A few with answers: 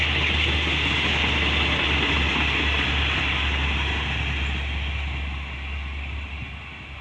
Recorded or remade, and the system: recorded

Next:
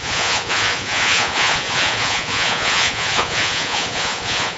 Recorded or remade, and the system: remade, vocoder, Vocos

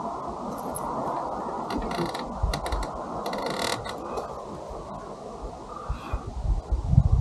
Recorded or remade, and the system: recorded